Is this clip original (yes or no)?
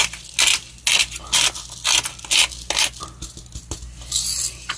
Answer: yes